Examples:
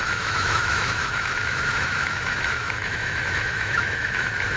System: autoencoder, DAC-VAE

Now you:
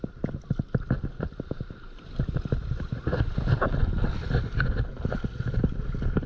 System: none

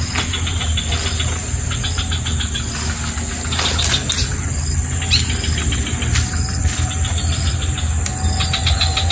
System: none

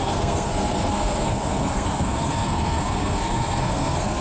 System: codec, SNAC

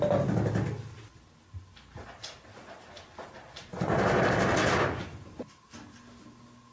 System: none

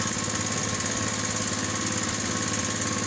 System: none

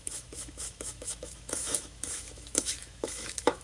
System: autoencoder, DAC-VAE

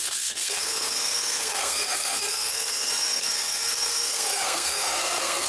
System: codec, SNAC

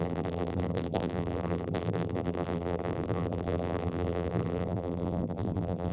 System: vocoder, BigVGAN v2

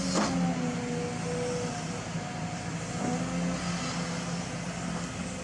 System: none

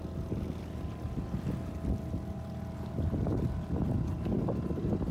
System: none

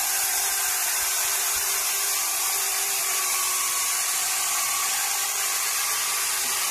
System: none